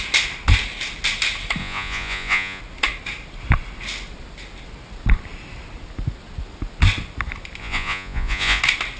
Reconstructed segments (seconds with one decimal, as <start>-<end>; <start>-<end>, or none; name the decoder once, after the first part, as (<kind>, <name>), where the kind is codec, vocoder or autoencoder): 1.6-2.6 (vocoder, Vocos); 7.6-8.6